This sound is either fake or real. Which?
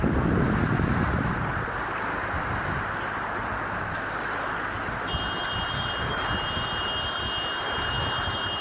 real